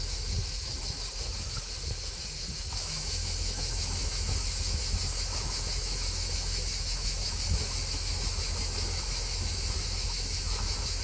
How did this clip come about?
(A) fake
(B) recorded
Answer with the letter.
A